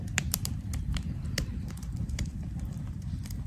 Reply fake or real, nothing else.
fake